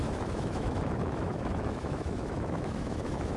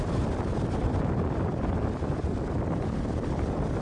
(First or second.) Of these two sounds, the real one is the second